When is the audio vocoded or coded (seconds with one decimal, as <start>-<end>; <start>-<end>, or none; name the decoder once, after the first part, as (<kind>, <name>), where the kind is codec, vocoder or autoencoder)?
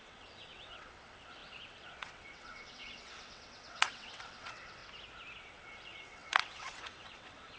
0.0-4.8 (vocoder, WaveNeXt); 5.4-7.6